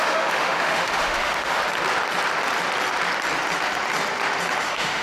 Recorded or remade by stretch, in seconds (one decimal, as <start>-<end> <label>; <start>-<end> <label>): 0.0-1.6 remade; 1.6-4.6 recorded; 4.6-5.0 remade